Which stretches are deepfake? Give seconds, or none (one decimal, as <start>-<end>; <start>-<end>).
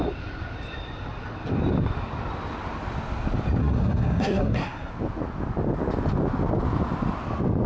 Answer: 3.6-4.9